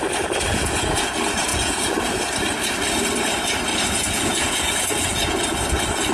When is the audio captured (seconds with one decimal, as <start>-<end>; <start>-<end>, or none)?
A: 0.0-0.5; 1.1-1.5; 2.1-3.7; 5.4-6.1